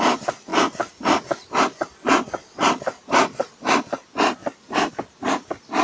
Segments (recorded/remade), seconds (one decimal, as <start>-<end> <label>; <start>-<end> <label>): 0.0-4.4 recorded; 4.4-4.9 remade; 4.9-5.8 recorded